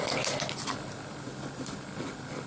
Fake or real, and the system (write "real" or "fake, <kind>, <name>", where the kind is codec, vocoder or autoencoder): fake, vocoder, BigVGAN v2